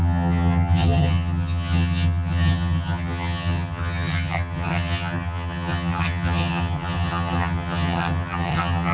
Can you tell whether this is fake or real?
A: fake